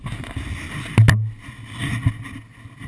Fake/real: real